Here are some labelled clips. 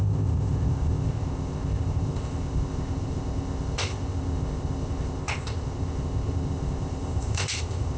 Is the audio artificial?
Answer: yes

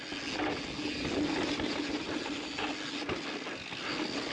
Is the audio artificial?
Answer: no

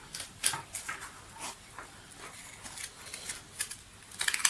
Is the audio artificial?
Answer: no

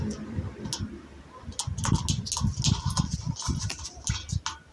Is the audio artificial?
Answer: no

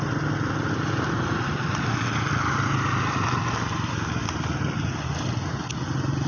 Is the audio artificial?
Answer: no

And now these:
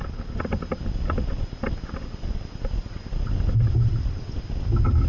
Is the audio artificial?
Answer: no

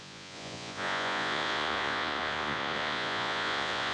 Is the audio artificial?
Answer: yes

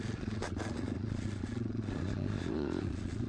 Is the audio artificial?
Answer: yes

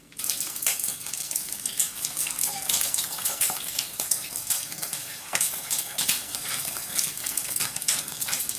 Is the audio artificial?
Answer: yes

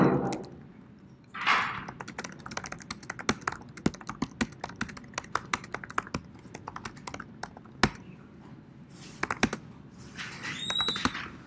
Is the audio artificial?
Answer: no